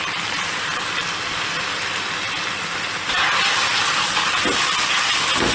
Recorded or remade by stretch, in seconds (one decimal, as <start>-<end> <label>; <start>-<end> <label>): 0.0-5.5 recorded